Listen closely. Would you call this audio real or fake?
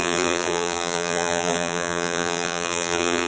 fake